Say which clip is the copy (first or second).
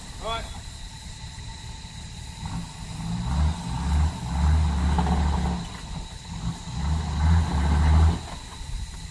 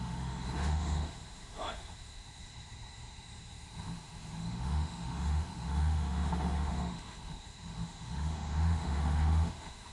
second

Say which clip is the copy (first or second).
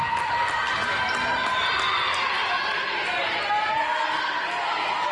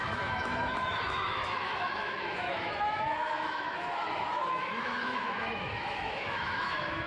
second